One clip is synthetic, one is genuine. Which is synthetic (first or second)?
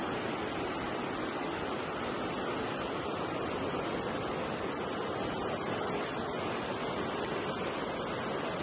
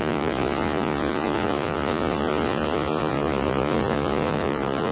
second